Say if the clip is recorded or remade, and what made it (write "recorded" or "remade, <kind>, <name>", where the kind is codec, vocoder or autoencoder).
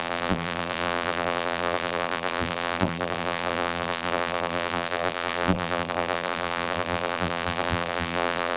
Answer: remade, vocoder, BigVGAN v2